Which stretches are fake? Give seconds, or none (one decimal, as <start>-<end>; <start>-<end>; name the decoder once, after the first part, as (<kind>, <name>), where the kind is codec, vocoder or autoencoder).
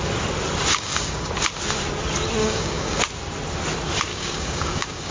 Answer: 0.7-1.3 (codec, DAC); 2.4-3.0; 4.1-5.1